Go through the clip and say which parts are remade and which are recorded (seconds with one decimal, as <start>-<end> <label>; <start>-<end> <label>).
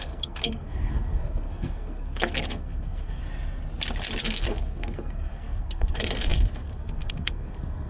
0.0-3.2 remade; 3.2-4.2 recorded; 4.2-7.9 remade